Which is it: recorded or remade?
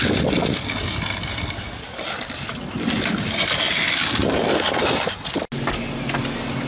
recorded